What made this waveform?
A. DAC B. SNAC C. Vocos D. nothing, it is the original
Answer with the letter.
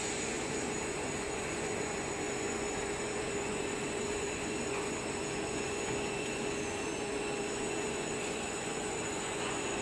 C